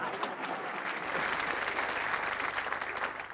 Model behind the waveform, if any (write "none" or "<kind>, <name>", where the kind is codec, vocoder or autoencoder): none